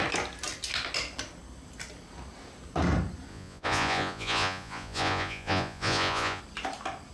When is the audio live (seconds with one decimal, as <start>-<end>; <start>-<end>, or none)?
0.0-3.3; 6.4-7.1